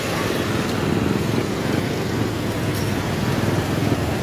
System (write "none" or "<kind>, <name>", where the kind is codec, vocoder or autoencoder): none